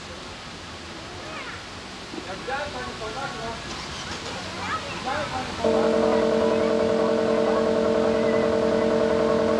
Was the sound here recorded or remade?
recorded